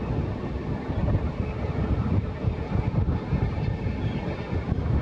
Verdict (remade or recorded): recorded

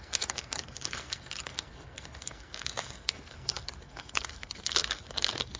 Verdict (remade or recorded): remade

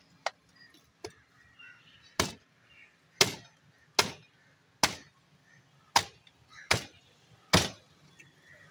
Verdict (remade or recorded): recorded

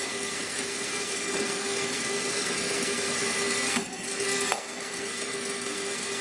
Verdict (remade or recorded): remade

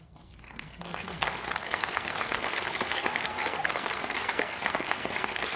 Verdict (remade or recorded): remade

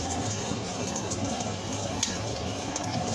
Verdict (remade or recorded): remade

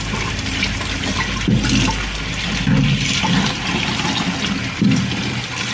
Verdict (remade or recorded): recorded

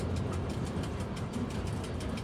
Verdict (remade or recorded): recorded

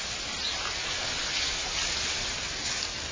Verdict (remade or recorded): recorded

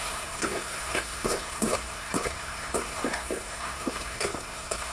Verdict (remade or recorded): remade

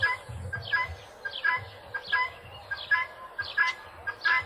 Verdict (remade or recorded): recorded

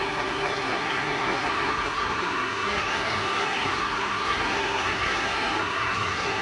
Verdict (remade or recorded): remade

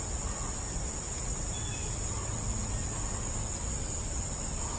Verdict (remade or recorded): recorded